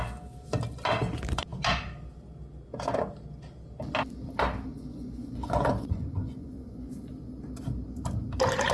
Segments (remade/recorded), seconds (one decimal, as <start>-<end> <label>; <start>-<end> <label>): 0.0-4.7 recorded; 4.7-7.1 remade; 7.1-8.7 recorded